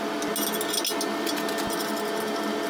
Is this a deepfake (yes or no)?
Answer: no